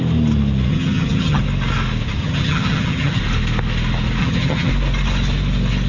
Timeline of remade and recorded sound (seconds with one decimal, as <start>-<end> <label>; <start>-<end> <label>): 0.0-0.7 recorded; 0.7-1.4 remade; 1.4-2.2 recorded; 2.2-3.2 remade; 3.2-4.2 recorded; 4.2-4.7 remade; 4.7-5.9 recorded